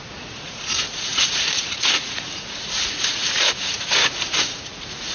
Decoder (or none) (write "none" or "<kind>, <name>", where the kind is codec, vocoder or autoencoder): vocoder, Vocos